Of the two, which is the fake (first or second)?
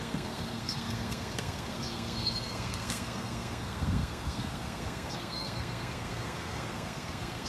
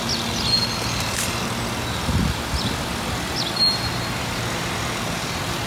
first